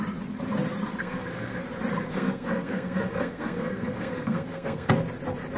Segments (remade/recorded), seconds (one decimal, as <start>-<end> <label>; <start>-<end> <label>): 0.0-1.0 recorded; 1.0-1.6 remade; 1.6-2.1 recorded; 2.1-4.9 remade; 4.9-5.6 recorded